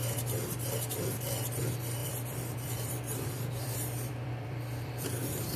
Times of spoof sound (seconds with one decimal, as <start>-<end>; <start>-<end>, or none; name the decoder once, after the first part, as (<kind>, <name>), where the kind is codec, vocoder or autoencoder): 2.0-5.6 (vocoder, BigVGAN v2)